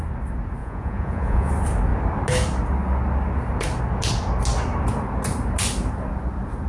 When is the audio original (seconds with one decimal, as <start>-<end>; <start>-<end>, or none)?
0.0-0.6; 1.5-6.7